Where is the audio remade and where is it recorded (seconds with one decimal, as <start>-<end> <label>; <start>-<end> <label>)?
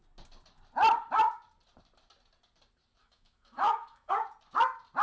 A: 0.0-3.0 recorded; 3.0-4.1 remade; 4.1-5.0 recorded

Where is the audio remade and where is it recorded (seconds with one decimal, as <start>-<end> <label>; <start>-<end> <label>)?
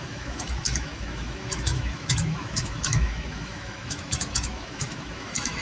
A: 0.0-5.6 remade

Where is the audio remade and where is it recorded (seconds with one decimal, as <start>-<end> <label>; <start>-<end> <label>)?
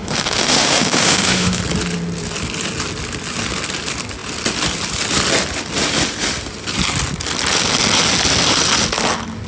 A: 0.0-1.6 remade; 1.6-9.5 recorded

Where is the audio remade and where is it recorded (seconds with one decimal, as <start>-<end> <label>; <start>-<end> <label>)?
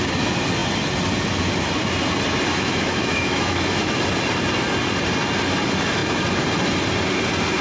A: 0.0-2.5 recorded; 2.5-4.0 remade; 4.0-7.6 recorded